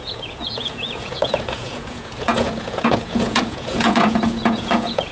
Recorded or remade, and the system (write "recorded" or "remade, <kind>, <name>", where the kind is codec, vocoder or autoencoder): remade, vocoder, Vocos